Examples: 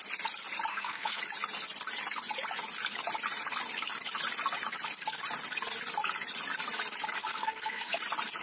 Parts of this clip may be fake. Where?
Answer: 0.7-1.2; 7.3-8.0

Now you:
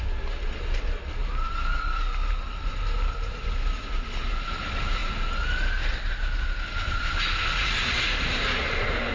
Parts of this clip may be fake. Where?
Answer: none

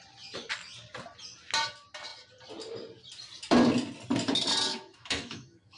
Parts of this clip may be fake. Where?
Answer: 4.7-5.8

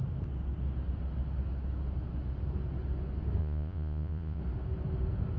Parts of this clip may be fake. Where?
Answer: 3.4-4.4

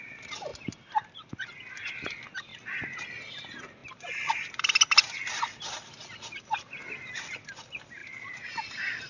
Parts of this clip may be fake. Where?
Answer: 8.0-9.1

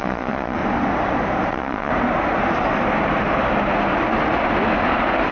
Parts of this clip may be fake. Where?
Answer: 0.0-0.6; 1.5-1.9